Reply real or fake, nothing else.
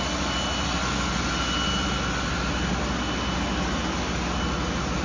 real